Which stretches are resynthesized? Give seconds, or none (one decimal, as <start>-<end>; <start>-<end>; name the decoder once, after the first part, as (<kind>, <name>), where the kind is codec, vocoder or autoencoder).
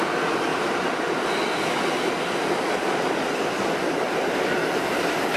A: none